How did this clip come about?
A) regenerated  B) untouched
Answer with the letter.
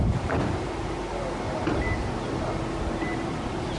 B